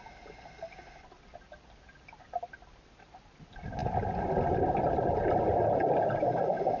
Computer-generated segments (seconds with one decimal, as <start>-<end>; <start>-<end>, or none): none